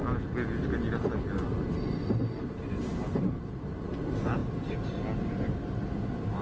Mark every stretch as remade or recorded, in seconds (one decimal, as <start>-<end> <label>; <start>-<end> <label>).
0.0-2.4 recorded; 2.4-4.4 remade; 4.4-5.4 recorded; 5.4-6.4 remade